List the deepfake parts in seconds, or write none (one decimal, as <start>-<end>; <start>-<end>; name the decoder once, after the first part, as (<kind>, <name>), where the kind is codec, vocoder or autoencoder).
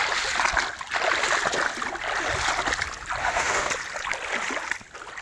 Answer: 3.2-3.7 (autoencoder, DAC-VAE)